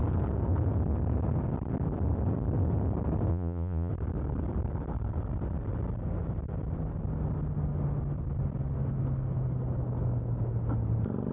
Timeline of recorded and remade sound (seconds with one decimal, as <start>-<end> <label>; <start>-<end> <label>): 0.0-3.3 recorded; 3.3-3.9 remade; 3.9-11.3 recorded